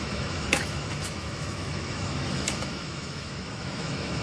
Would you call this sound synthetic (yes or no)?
yes